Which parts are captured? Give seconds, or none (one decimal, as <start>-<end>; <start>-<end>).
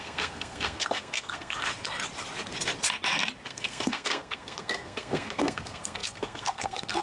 1.7-3.5